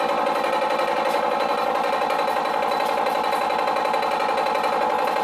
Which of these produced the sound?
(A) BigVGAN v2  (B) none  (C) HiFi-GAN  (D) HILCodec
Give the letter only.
B